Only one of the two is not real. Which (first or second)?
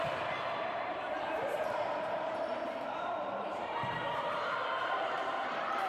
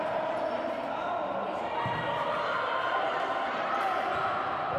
first